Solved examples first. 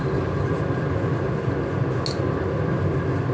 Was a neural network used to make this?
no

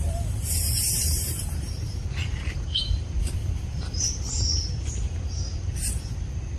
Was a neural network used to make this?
yes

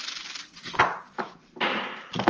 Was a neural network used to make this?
yes